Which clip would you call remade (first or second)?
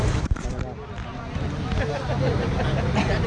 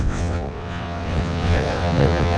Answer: second